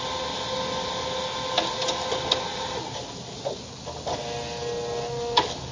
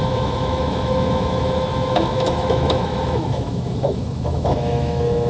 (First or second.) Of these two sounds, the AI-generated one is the second